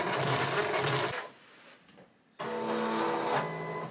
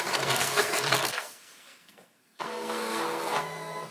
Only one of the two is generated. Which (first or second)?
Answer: second